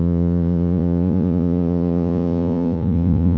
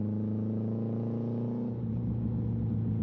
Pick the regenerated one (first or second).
first